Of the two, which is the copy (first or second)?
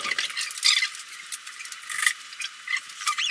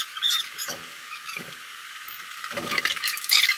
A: second